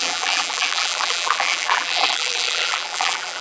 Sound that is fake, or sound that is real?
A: fake